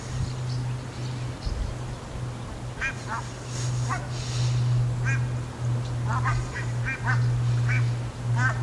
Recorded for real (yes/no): yes